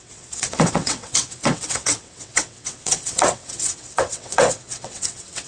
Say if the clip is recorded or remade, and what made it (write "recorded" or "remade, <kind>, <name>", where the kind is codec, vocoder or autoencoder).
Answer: remade, vocoder, WaveNeXt